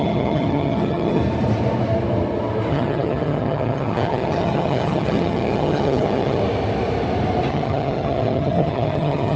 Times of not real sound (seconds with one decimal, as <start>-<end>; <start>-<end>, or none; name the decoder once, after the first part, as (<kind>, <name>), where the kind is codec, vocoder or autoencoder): 0.0-1.2 (vocoder, HiFi-GAN); 2.7-6.4; 7.5-9.4